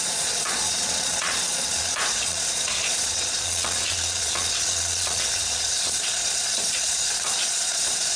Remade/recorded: remade